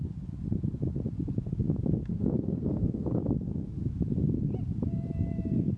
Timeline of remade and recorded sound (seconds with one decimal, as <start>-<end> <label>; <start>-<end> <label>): 0.0-2.1 recorded; 2.1-3.2 remade; 3.2-5.8 recorded